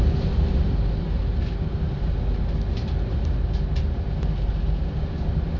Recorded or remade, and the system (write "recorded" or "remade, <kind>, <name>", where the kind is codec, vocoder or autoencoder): recorded